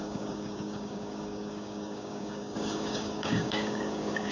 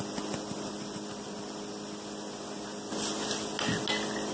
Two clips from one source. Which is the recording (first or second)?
second